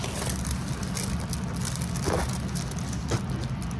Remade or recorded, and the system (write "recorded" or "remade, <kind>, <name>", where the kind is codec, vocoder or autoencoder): recorded